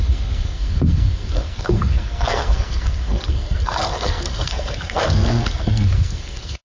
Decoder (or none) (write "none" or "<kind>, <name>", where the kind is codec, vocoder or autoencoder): codec, SNAC